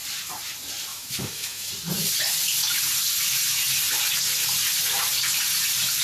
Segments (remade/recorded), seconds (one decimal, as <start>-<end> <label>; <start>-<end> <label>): 0.0-0.9 recorded; 0.9-1.7 remade; 1.7-6.0 recorded